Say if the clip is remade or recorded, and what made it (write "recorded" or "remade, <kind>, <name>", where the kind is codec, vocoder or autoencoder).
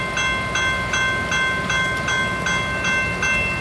recorded